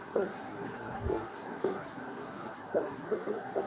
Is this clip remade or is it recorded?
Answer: remade